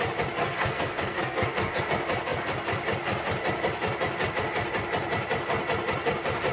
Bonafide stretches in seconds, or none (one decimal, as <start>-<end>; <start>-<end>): 0.0-0.4; 1.8-6.5

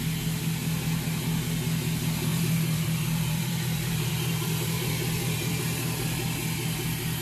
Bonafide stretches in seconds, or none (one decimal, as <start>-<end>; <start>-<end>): 0.0-2.3; 5.6-7.2

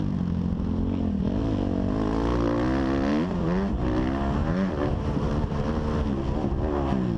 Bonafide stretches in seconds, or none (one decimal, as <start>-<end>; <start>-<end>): 0.0-4.4; 5.7-7.2